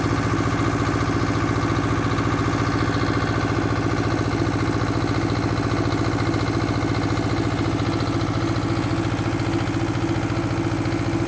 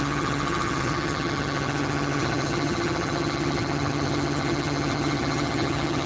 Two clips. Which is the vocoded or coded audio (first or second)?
second